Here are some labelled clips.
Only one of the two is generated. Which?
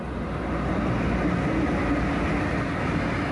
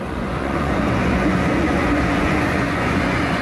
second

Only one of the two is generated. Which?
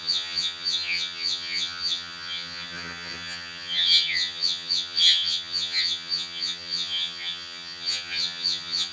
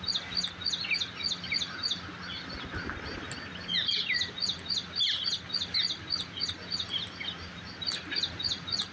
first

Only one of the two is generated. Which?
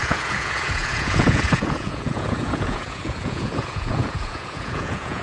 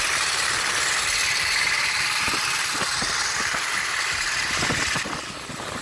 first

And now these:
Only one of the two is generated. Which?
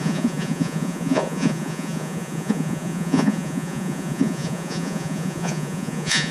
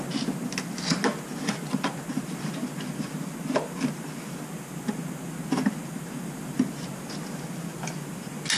first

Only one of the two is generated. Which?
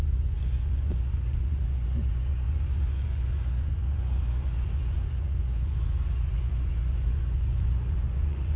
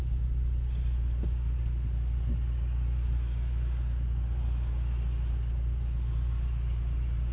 first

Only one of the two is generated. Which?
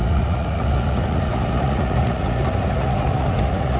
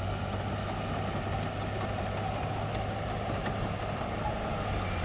first